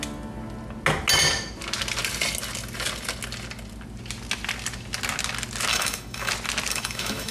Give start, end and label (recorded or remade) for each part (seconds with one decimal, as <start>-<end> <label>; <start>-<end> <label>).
0.0-5.7 recorded; 5.7-6.3 remade; 6.3-6.7 recorded; 6.7-7.3 remade